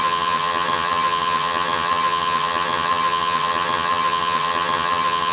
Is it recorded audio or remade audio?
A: remade